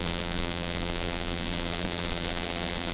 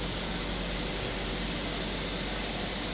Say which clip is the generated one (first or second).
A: first